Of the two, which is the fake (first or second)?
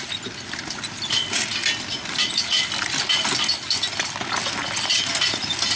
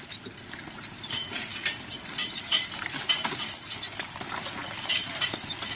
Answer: second